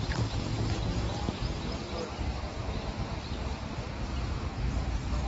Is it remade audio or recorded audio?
recorded